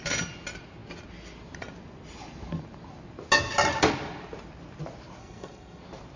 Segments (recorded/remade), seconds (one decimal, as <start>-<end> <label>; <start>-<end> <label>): 0.0-5.2 recorded; 5.2-5.8 remade; 5.8-6.2 recorded